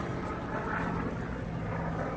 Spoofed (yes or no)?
no